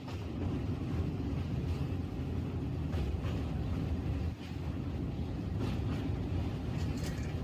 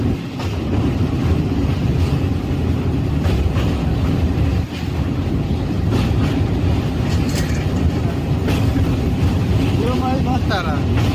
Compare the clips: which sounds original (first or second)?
first